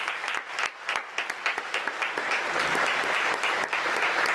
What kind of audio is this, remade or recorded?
recorded